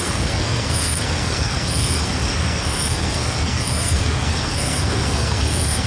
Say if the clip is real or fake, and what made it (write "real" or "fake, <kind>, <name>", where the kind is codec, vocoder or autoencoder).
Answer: fake, codec, SNAC